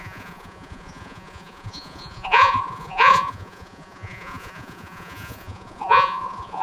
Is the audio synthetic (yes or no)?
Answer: yes